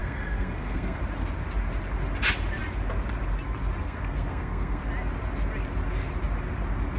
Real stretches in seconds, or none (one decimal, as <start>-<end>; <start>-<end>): 1.0-3.8; 4.8-7.0

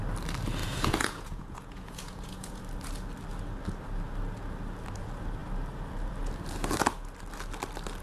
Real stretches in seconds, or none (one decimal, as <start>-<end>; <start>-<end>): 0.0-0.6; 2.6-8.0

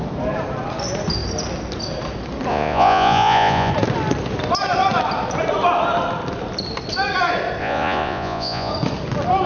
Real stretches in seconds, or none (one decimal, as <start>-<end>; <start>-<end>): 0.0-2.5; 3.7-7.6; 8.7-9.5

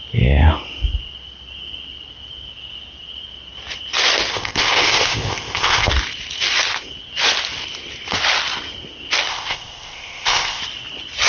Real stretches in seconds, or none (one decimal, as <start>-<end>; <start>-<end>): 0.0-4.3; 5.9-9.3; 10.6-11.3

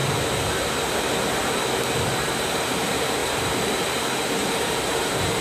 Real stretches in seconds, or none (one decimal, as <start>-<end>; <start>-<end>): 1.6-3.2; 4.0-4.4